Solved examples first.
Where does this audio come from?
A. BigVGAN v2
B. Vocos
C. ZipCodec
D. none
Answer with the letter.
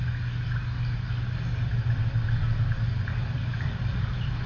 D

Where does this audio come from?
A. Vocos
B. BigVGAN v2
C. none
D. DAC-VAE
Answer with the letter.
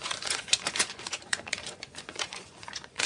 A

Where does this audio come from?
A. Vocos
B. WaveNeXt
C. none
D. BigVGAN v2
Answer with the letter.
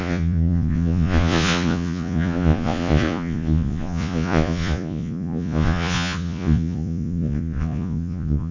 A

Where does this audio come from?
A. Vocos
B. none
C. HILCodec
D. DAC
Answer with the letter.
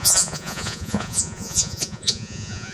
A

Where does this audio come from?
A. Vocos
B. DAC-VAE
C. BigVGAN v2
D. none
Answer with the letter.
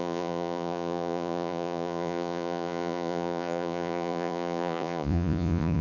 A